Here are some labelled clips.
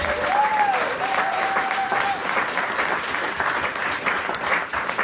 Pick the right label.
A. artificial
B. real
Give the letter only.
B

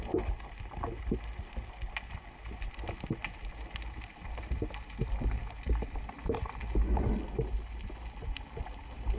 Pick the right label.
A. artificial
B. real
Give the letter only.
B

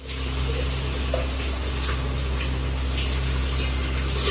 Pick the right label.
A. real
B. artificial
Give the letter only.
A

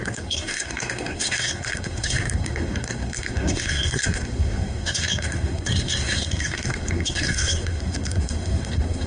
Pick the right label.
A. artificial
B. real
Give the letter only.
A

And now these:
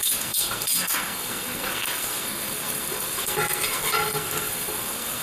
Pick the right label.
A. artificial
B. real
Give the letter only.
A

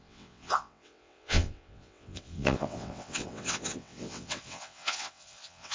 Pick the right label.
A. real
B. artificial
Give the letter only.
B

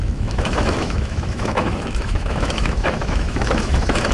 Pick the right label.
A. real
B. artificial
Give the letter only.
B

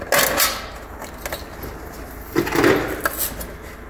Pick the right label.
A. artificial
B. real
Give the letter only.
B